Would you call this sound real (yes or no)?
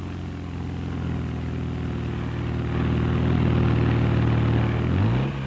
yes